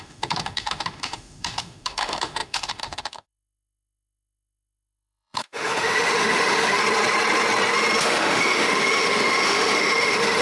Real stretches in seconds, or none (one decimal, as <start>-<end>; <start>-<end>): 6.8-8.0

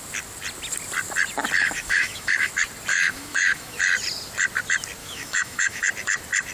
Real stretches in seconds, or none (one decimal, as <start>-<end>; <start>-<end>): 0.0-1.6; 2.5-2.9; 3.8-5.0; 5.9-6.5

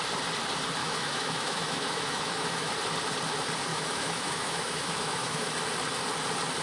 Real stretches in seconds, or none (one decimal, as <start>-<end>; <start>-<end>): 0.0-0.8; 2.7-3.7; 5.5-6.6